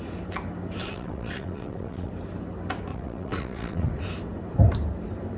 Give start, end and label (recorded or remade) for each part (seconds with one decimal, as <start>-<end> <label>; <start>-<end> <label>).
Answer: 0.0-0.8 recorded; 0.8-2.1 remade; 2.1-2.9 recorded; 2.9-3.9 remade; 3.9-5.4 recorded